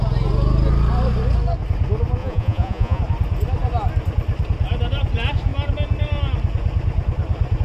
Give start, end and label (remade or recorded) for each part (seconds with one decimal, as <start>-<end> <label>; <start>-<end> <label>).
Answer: 0.0-2.2 recorded; 2.2-3.0 remade; 3.0-7.6 recorded